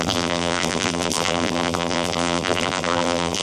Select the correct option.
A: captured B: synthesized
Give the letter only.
B